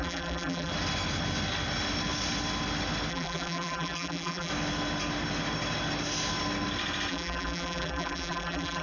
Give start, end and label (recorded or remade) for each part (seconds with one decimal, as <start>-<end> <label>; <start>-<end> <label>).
0.0-0.7 remade; 0.7-3.1 recorded; 3.1-4.5 remade; 4.5-7.1 recorded; 7.1-8.8 remade